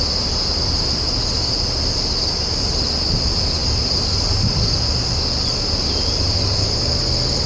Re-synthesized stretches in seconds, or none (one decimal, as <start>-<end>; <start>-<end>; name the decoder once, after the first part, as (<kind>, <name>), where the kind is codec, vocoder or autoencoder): none